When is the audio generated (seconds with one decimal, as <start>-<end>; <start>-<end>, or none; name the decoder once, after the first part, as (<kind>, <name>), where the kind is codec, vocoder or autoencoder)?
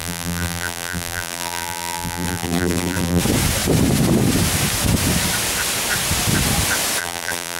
0.0-3.2 (vocoder, BigVGAN v2); 7.0-7.6